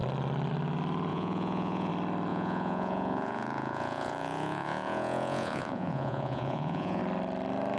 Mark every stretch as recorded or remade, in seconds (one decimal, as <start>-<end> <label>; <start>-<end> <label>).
0.0-1.1 recorded; 1.1-1.9 remade; 1.9-2.3 recorded; 2.3-7.0 remade; 7.0-7.8 recorded